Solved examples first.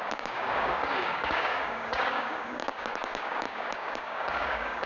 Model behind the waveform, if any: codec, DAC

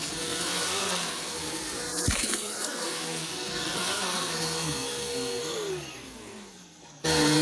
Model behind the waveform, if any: codec, SNAC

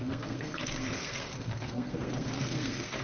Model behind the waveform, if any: codec, SNAC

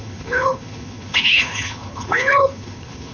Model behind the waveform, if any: codec, HILCodec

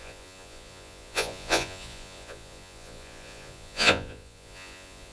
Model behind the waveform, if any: vocoder, Vocos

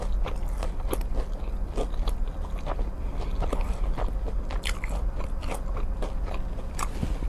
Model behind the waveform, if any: none